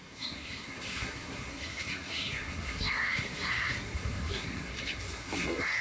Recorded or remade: remade